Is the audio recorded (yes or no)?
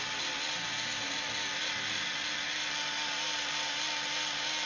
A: yes